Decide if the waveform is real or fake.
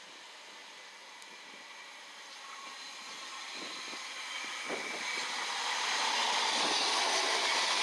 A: real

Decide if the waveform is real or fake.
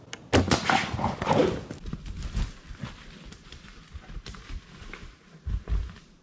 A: real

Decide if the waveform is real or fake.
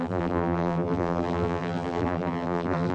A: fake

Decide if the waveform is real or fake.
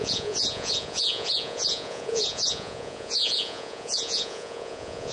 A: fake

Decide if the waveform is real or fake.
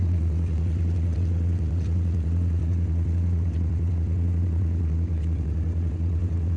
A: fake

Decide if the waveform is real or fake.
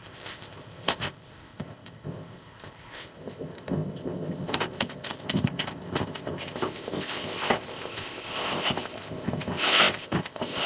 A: fake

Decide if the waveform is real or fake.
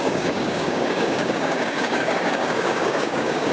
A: fake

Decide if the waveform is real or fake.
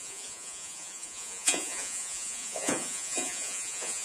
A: fake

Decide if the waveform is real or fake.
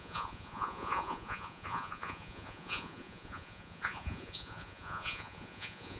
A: fake